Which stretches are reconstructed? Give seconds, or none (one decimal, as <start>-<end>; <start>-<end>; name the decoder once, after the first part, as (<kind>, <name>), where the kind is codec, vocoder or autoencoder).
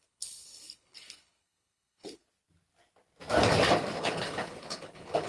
0.0-2.2 (codec, HILCodec); 4.0-5.3